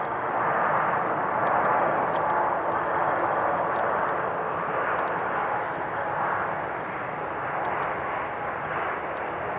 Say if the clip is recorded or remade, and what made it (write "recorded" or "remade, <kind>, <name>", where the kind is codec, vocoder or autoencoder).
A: recorded